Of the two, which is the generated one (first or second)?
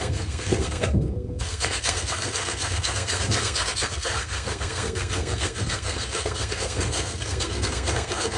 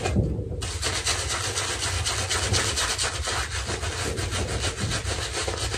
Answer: first